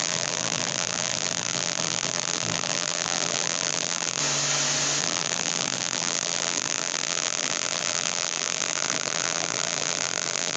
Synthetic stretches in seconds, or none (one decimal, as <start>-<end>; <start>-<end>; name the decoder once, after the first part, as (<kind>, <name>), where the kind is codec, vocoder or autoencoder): 0.0-4.2 (vocoder, BigVGAN v2); 5.0-10.6